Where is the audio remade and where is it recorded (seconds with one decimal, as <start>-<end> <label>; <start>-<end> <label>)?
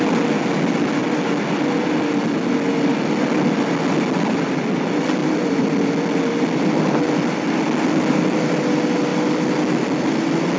0.0-5.2 recorded; 5.2-6.8 remade; 6.8-10.6 recorded